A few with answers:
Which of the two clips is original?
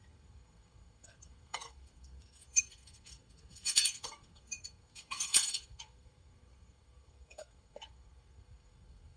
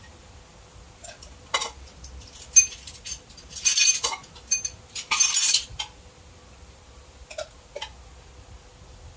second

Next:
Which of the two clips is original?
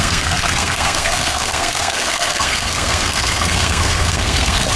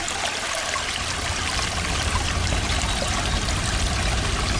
second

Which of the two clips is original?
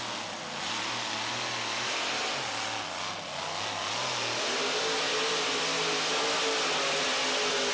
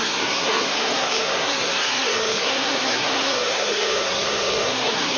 first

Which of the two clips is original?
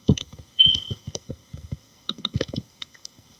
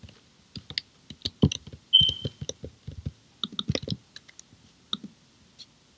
second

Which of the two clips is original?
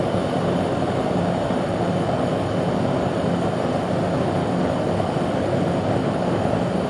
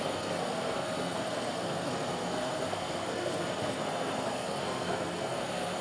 first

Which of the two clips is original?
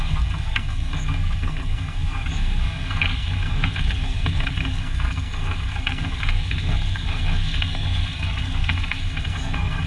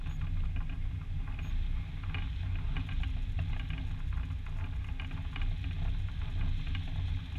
second